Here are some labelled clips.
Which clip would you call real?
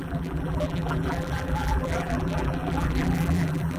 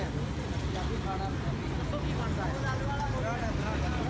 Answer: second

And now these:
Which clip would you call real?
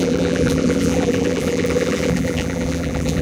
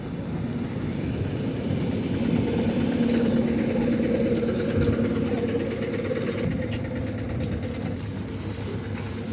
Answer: second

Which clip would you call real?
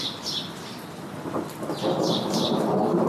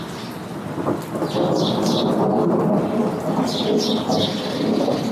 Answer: second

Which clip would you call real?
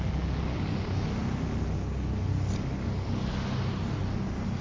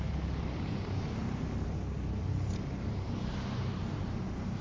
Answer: first